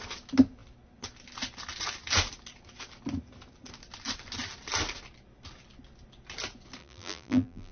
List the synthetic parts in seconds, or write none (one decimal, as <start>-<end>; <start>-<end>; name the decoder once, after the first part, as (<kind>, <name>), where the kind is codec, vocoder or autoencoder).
6.8-7.7 (vocoder, BigVGAN v2)